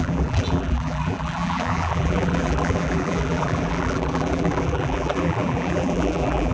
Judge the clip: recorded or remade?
remade